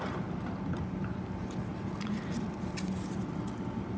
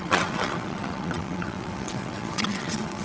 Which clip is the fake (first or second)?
second